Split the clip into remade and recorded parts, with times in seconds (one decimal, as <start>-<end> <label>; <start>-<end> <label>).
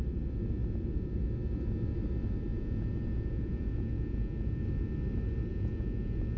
0.0-2.5 recorded; 2.5-4.6 remade; 4.6-5.5 recorded; 5.5-6.4 remade